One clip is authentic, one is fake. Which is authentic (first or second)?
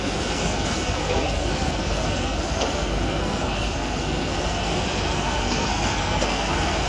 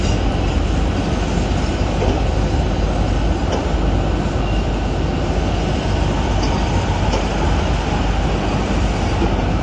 second